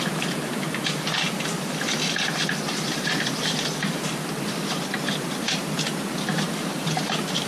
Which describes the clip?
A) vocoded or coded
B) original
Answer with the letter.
B